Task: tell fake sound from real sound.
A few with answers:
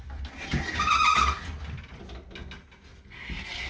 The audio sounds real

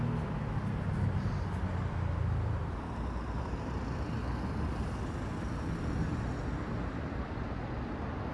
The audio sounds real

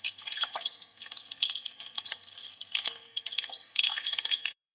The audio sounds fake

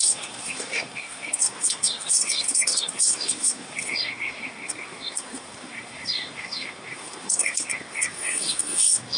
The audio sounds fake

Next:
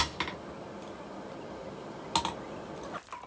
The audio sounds real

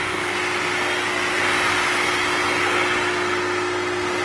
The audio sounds real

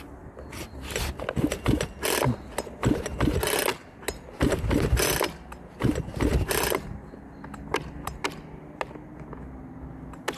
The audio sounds real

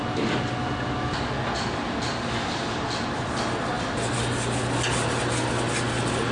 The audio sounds real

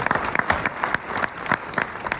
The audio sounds real